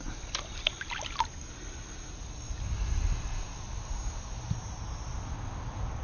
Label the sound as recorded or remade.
recorded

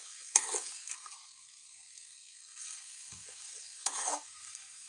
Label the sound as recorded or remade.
remade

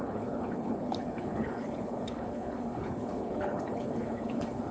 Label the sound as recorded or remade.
remade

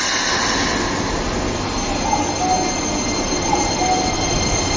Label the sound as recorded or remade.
recorded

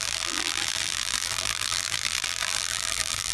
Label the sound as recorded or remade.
remade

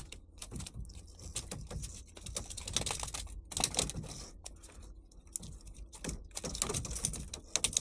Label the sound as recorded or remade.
recorded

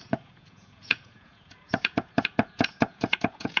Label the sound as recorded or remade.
remade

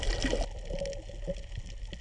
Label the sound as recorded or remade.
recorded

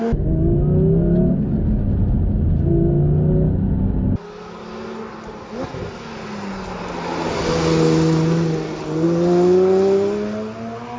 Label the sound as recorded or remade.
recorded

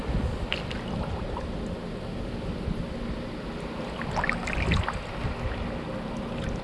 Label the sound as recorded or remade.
recorded